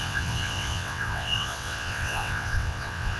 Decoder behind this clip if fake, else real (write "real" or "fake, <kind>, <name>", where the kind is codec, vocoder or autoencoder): fake, vocoder, WaveNeXt